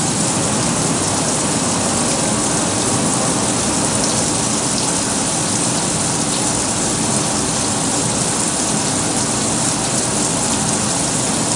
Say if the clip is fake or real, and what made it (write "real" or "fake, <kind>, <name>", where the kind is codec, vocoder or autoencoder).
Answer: real